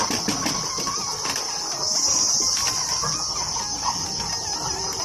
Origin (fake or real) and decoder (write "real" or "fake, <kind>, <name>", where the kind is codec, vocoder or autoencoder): real